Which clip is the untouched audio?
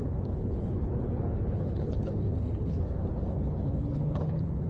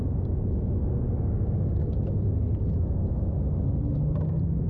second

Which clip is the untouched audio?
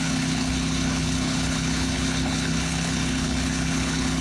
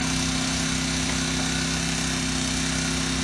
second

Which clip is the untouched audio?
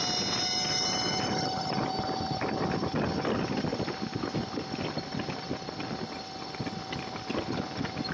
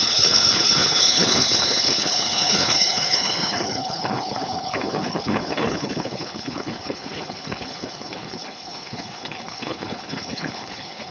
first